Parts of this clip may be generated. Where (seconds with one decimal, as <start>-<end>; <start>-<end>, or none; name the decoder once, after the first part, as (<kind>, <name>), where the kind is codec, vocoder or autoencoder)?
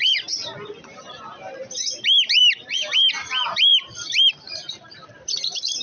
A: none